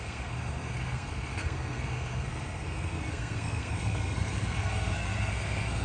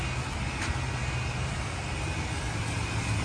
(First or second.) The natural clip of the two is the second